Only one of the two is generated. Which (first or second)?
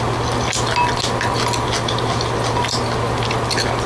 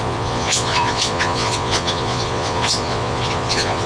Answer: second